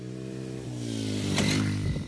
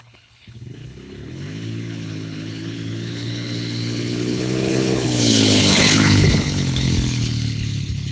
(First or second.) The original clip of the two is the first